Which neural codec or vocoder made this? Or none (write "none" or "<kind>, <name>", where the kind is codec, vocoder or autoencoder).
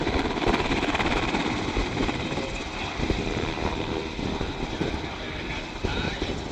vocoder, BigVGAN v2